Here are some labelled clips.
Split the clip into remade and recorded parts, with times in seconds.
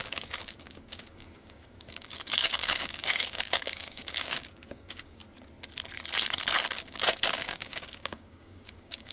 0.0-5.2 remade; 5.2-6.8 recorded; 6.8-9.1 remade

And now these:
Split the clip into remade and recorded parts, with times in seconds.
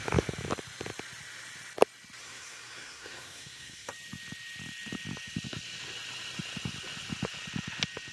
0.0-2.2 recorded; 2.2-3.9 remade; 3.9-8.1 recorded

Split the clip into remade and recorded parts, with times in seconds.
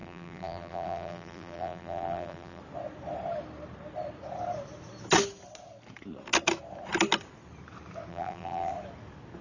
0.0-2.6 remade; 2.6-8.1 recorded; 8.1-8.7 remade; 8.7-9.4 recorded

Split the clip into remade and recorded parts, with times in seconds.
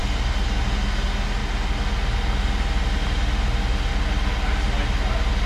0.0-5.5 recorded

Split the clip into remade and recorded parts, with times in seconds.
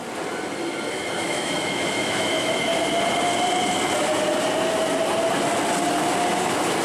0.0-0.9 recorded; 0.9-2.7 remade; 2.7-6.8 recorded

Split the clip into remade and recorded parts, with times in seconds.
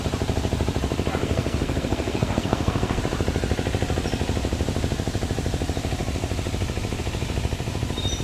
0.0-1.2 recorded; 1.2-3.0 remade; 3.0-8.2 recorded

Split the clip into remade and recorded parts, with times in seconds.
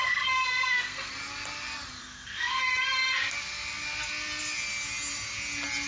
0.0-1.1 remade; 1.1-2.0 recorded; 2.0-2.6 remade; 2.6-5.9 recorded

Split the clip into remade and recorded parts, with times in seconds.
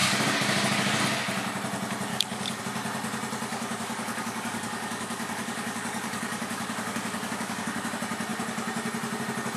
0.0-1.0 remade; 1.0-2.1 recorded; 2.1-2.6 remade; 2.6-3.5 recorded; 3.5-7.9 remade; 7.9-9.6 recorded